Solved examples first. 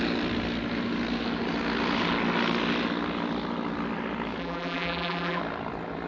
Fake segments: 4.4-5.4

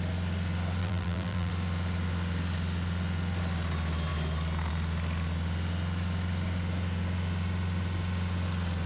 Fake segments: 0.8-1.5

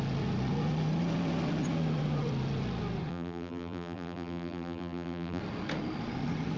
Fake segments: 3.1-5.4

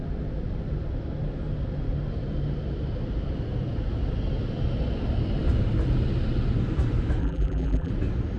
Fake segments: 7.2-7.9